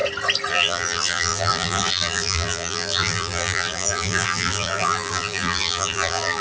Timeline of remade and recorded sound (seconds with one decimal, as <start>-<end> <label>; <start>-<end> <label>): 0.0-0.5 recorded; 0.5-6.4 remade